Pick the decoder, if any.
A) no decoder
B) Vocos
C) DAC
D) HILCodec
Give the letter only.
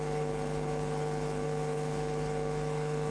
D